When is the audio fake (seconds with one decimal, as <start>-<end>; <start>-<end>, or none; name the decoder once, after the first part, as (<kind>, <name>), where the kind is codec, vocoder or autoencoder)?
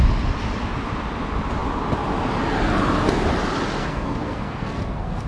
3.8-5.3 (codec, SNAC)